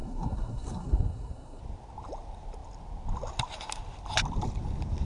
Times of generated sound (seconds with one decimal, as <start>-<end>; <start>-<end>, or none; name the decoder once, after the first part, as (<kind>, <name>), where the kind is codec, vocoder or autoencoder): 0.0-1.6 (codec, SNAC)